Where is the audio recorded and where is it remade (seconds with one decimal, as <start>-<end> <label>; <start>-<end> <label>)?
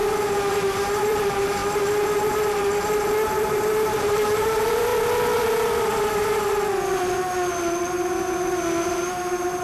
0.0-0.5 recorded; 0.5-1.6 remade; 1.6-3.4 recorded; 3.4-4.9 remade; 4.9-8.9 recorded; 8.9-9.6 remade